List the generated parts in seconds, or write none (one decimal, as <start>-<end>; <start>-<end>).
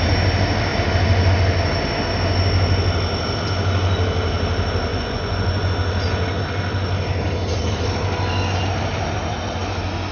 4.9-5.7